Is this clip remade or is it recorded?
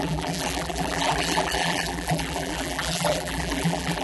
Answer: remade